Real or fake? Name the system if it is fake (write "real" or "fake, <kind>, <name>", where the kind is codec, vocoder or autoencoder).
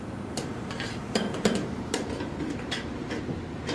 fake, vocoder, BigVGAN v2